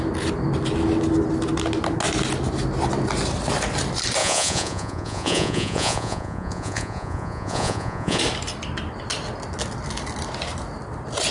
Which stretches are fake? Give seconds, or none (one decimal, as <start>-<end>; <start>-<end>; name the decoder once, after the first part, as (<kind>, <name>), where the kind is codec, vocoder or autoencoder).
4.2-8.2 (vocoder, Vocos)